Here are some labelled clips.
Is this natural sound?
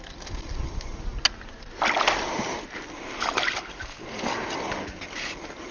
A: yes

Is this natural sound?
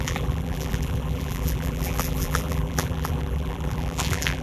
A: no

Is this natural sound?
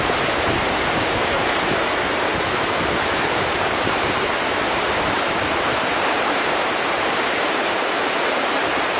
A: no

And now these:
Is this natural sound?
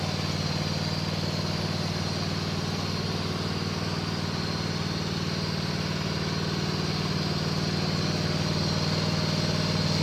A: yes